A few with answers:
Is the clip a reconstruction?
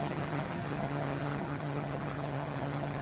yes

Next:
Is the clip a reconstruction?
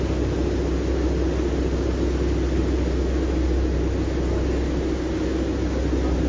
no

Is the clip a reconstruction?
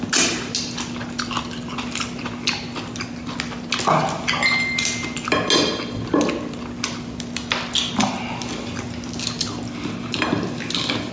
no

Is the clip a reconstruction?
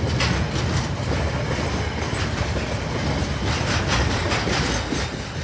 no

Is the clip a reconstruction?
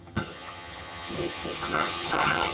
yes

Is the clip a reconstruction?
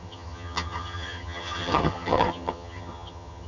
yes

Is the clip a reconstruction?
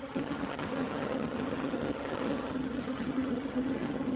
yes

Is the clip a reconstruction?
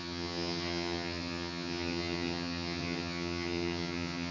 yes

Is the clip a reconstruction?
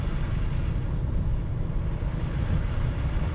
no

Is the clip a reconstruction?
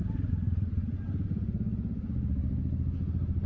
no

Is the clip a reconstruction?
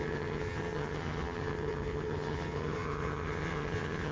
yes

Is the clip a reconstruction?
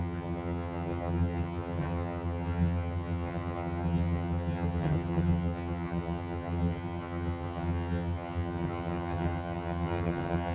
yes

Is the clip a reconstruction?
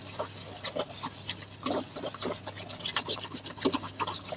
no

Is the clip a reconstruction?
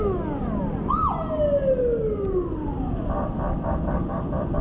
no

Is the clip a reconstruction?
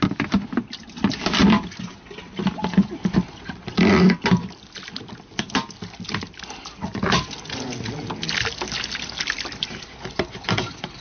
no